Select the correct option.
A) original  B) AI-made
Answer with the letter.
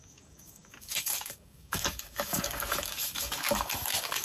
B